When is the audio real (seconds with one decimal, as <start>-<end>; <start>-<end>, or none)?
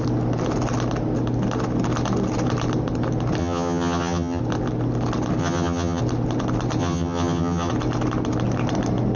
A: 0.0-3.4; 4.4-5.4; 6.0-6.8; 7.7-9.2